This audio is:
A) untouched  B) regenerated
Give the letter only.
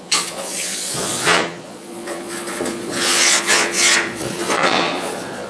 B